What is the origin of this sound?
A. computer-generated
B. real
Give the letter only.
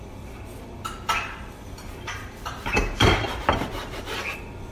A